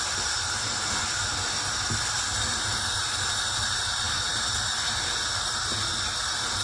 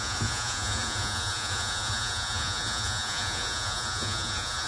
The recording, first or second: first